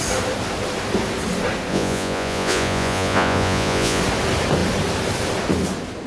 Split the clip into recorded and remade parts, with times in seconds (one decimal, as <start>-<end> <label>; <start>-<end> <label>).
0.0-1.7 recorded; 1.7-4.0 remade; 4.0-6.1 recorded